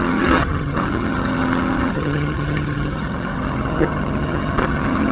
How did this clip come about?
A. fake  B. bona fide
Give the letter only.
A